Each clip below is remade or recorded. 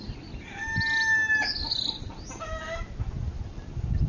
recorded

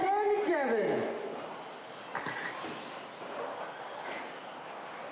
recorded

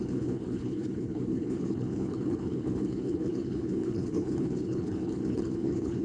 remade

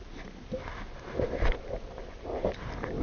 recorded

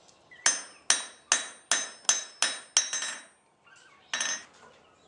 recorded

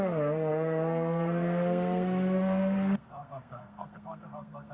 remade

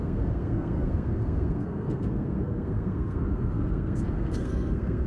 remade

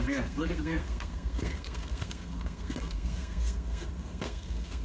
remade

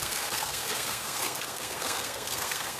remade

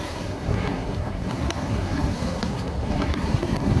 remade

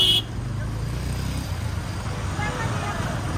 recorded